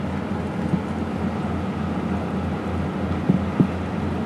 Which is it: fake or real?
real